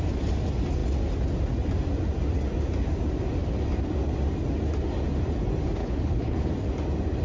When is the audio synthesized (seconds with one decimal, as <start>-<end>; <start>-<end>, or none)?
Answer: 5.8-6.5